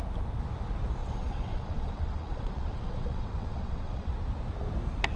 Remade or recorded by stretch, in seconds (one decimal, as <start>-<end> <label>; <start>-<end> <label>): 0.0-1.0 recorded; 1.0-4.1 remade; 4.1-5.2 recorded

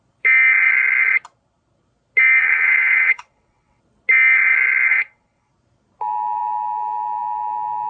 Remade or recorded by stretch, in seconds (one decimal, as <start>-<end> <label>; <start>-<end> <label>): 0.0-2.4 recorded; 2.4-3.8 remade; 3.8-4.9 recorded; 4.9-5.5 remade; 5.5-7.9 recorded

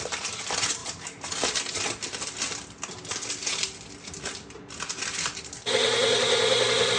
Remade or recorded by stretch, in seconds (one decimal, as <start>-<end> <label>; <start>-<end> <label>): 0.0-7.0 recorded

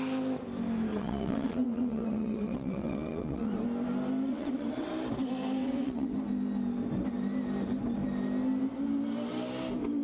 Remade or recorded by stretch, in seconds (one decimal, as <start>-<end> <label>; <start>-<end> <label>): 0.0-0.9 recorded; 0.9-3.5 remade; 3.5-4.3 recorded; 4.3-4.9 remade; 4.9-5.6 recorded; 5.6-6.1 remade; 6.1-10.0 recorded

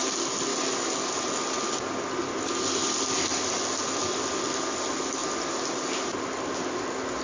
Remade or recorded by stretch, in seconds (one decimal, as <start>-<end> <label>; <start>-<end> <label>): 0.0-7.2 recorded